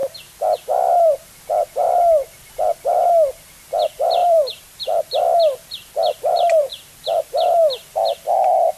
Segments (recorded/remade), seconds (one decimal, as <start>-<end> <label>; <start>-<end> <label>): 0.0-4.2 recorded; 4.2-5.2 remade; 5.2-6.0 recorded; 6.0-7.6 remade; 7.6-8.8 recorded

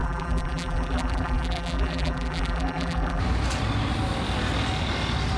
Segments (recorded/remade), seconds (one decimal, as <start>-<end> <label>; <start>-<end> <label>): 0.0-3.2 remade; 3.2-5.4 recorded

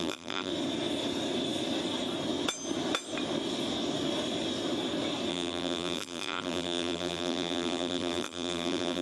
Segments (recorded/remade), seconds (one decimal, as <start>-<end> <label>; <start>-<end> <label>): 0.0-0.5 remade; 0.5-5.3 recorded; 5.3-9.0 remade

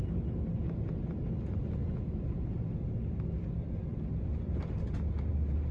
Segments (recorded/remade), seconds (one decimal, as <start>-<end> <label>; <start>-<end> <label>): 0.0-5.7 recorded

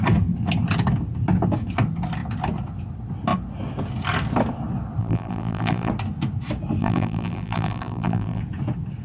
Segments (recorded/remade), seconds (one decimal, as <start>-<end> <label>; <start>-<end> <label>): 0.0-5.0 recorded; 5.0-5.9 remade; 5.9-6.8 recorded; 6.8-8.4 remade; 8.4-9.0 recorded

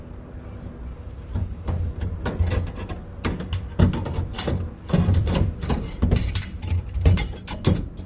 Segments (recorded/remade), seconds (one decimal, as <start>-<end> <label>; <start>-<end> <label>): 0.0-1.4 remade; 1.4-5.0 recorded; 5.0-8.1 remade

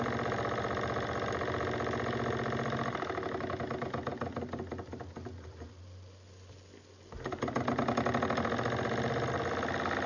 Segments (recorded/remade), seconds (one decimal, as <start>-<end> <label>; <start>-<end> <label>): 0.0-4.1 recorded; 4.1-5.0 remade; 5.0-10.1 recorded